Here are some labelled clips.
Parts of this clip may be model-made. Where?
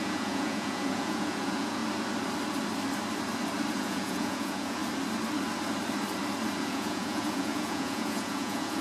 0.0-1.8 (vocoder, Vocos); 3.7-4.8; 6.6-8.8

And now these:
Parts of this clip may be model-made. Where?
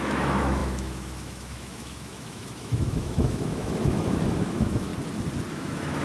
0.0-4.9 (autoencoder, DAC-VAE); 5.5-6.0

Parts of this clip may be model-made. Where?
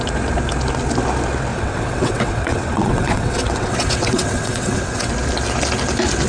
1.5-5.1 (vocoder, WaveNeXt)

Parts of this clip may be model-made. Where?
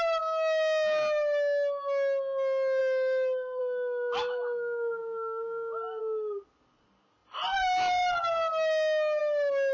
2.8-3.6 (autoencoder, DAC-VAE)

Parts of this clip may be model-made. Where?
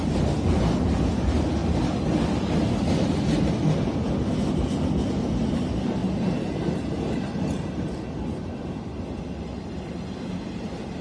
none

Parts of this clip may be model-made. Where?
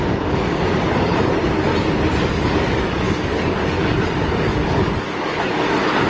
0.0-1.7 (codec, DAC); 2.3-6.1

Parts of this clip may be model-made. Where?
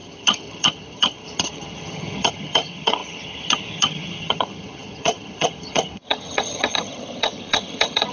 0.0-8.1 (vocoder, HiFi-GAN)